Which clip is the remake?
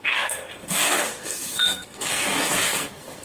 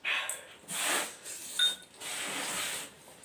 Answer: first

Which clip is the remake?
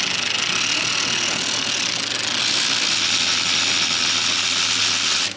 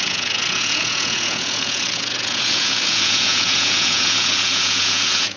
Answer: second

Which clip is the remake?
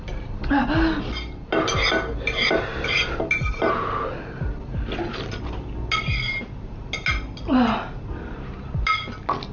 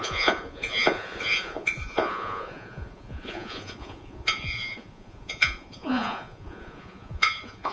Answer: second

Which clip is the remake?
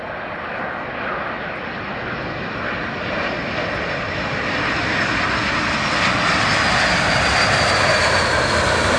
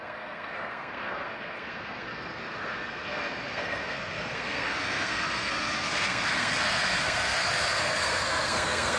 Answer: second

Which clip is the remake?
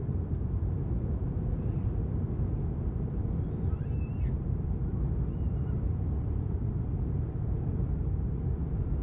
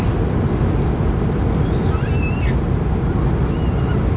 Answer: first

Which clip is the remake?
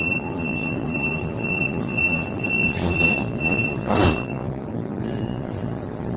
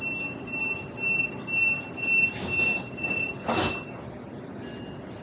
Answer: first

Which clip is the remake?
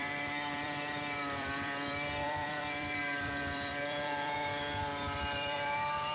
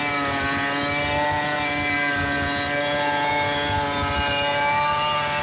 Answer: first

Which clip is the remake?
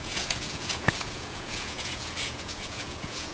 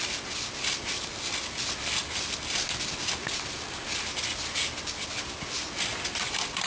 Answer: first